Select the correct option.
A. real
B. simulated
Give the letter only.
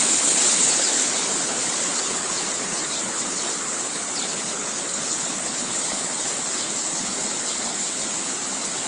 B